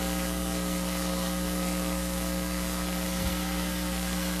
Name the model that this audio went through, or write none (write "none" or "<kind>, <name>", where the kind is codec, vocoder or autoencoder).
codec, SNAC